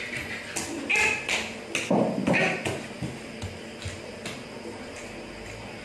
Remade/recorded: recorded